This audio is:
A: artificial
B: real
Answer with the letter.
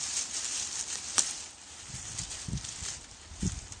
B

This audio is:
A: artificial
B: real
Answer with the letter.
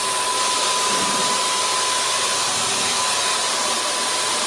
A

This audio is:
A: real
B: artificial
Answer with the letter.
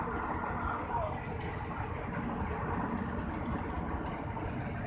A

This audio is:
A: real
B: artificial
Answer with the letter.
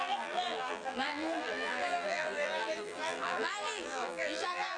B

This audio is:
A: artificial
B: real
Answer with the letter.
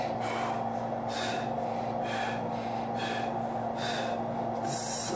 B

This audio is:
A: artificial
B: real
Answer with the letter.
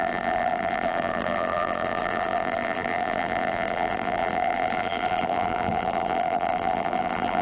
A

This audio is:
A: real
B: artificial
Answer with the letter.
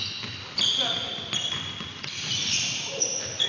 A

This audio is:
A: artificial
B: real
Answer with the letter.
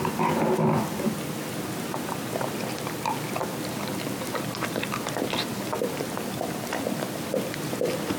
B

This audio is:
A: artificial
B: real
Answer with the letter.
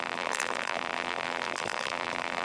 A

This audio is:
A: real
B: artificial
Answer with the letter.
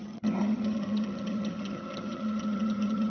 B